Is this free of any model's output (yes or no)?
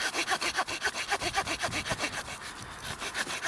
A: yes